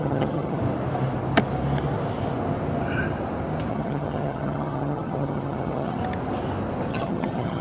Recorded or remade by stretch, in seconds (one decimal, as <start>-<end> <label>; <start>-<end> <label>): 0.0-0.6 remade; 0.6-3.7 recorded; 3.7-6.0 remade; 6.0-6.9 recorded; 6.9-7.6 remade

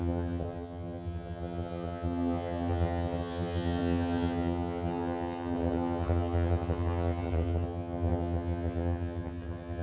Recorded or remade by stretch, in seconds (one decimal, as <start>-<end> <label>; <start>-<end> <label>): 0.0-9.8 remade

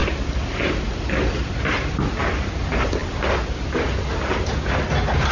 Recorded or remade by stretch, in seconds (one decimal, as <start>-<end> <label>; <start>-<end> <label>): 0.0-5.3 recorded

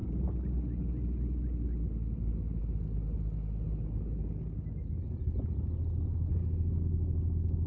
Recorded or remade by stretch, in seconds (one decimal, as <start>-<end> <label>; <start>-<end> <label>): 0.0-7.7 recorded

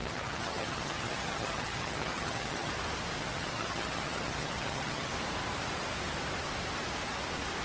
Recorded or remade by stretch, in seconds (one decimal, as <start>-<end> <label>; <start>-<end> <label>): 0.0-2.7 remade; 2.7-3.2 recorded; 3.2-5.1 remade; 5.1-7.6 recorded

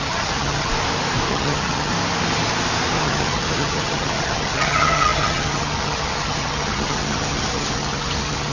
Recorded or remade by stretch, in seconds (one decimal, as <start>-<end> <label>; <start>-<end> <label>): 0.0-0.7 remade; 0.7-1.3 recorded; 1.3-1.9 remade; 1.9-3.0 recorded; 3.0-8.5 remade

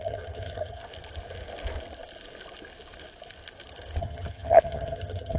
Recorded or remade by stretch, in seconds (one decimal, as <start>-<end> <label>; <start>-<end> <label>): 0.0-0.8 remade; 0.8-4.0 recorded; 4.0-5.4 remade